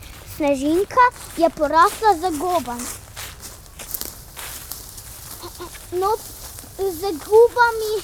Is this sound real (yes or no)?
yes